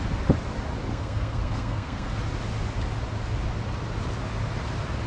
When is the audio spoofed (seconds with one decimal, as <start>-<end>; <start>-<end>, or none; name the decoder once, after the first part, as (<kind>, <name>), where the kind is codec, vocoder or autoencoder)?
0.9-2.2 (codec, SNAC)